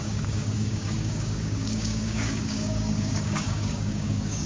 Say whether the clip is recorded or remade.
remade